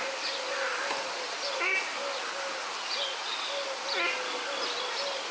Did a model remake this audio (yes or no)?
no